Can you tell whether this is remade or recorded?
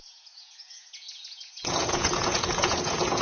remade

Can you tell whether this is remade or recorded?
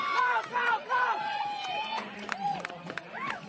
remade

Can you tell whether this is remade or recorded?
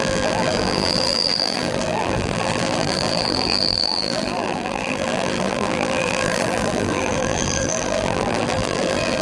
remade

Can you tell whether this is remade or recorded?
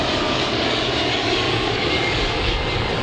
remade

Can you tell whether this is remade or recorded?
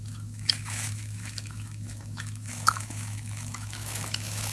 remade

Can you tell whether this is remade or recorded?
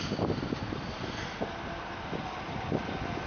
recorded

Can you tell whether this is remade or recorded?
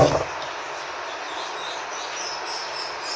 recorded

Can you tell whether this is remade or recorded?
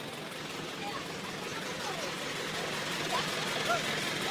recorded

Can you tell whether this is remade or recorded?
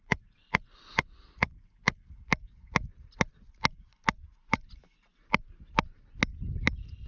recorded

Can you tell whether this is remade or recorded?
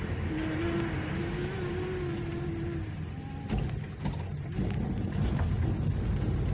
recorded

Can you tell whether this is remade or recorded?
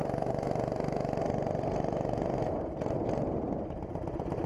recorded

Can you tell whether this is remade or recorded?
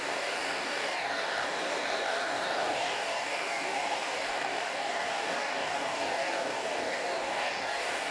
remade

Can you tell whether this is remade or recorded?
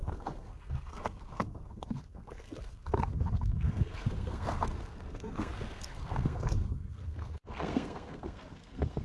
remade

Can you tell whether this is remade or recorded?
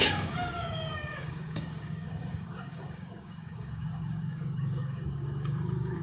remade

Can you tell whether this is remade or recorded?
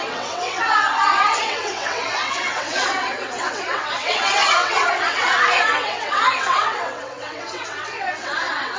remade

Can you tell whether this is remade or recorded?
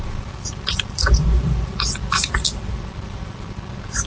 recorded